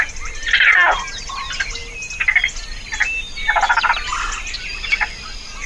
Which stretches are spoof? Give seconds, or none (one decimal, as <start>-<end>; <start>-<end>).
none